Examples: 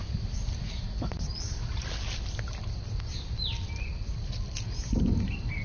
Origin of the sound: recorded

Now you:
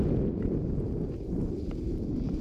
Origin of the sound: recorded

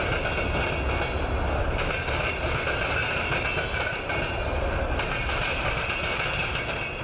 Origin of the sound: recorded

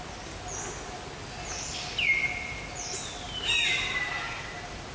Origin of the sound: recorded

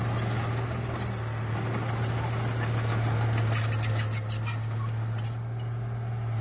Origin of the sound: recorded